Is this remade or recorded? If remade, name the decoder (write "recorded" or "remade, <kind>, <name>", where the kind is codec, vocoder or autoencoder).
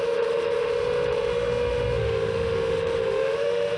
remade, autoencoder, DAC-VAE